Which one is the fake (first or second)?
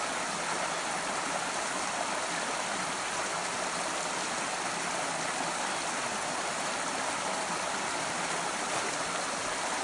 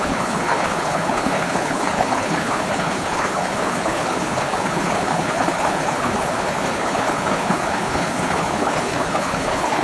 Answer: second